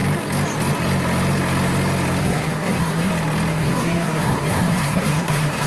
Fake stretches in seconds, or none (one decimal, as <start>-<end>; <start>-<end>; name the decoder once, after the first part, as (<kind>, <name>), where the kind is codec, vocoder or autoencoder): 2.2-3.1 (codec, SNAC); 3.5-5.7